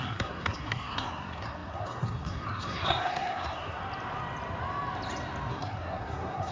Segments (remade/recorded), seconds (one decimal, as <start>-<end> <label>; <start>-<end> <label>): 0.0-3.8 remade; 3.8-5.5 recorded; 5.5-6.5 remade

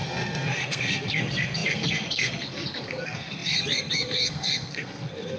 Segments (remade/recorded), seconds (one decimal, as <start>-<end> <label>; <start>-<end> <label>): 0.0-5.4 remade